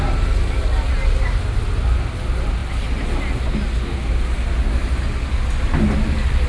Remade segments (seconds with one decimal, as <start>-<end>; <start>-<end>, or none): none